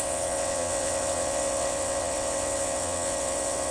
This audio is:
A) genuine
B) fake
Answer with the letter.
B